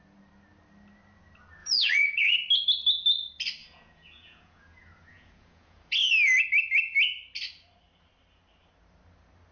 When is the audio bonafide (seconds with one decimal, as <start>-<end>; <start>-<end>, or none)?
0.0-1.6; 2.2-3.6; 6.1-9.5